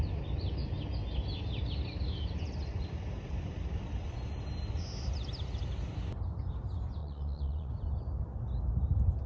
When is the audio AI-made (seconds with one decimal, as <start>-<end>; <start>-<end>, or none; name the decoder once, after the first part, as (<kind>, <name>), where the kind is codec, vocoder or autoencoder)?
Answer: 7.0-7.7 (vocoder, Vocos)